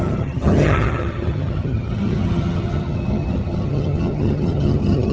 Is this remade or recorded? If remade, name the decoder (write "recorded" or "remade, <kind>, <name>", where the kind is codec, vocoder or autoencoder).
remade, vocoder, HiFi-GAN